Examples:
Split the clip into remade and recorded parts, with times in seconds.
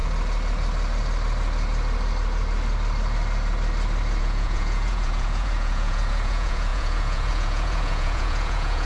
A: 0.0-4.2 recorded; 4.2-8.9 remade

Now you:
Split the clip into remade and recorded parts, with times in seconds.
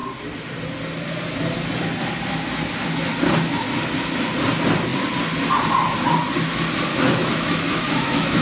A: 0.0-6.9 recorded; 6.9-8.4 remade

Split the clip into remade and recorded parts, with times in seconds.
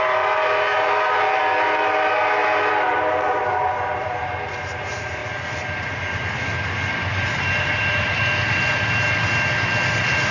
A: 0.0-5.2 remade; 5.2-10.3 recorded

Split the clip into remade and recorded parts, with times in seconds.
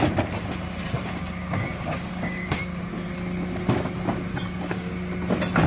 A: 0.0-1.0 recorded; 1.0-2.6 remade; 2.6-4.3 recorded; 4.3-4.9 remade; 4.9-5.7 recorded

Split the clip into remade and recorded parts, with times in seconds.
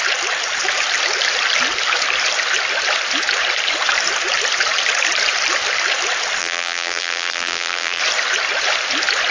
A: 0.0-6.4 recorded; 6.4-8.0 remade; 8.0-9.3 recorded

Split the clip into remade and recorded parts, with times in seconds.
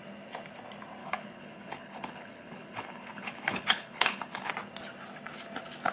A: 0.0-1.0 recorded; 1.0-4.5 remade; 4.5-5.9 recorded